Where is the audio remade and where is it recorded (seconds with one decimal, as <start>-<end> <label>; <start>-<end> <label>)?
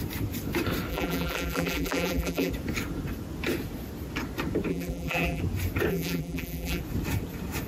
0.0-0.9 recorded; 0.9-2.5 remade; 2.5-4.7 recorded; 4.7-5.4 remade; 5.4-5.9 recorded; 5.9-6.8 remade; 6.8-7.7 recorded